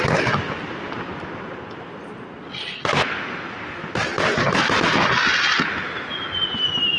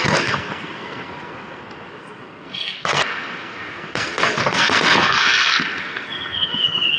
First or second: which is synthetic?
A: second